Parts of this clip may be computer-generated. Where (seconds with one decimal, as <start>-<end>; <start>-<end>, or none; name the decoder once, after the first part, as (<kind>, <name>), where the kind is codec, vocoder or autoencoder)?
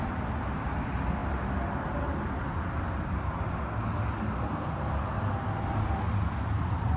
none